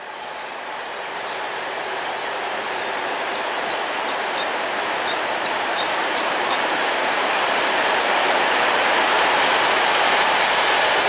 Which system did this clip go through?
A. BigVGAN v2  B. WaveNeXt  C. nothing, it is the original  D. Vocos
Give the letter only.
A